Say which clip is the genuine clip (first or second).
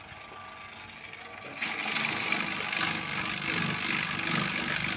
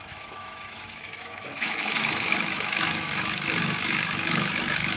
first